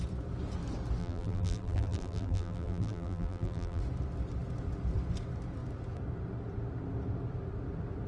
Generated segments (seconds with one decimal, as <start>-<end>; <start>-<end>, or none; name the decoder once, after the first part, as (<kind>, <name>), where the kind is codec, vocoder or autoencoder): 1.0-3.8 (vocoder, BigVGAN v2)